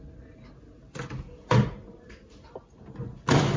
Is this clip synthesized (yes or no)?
no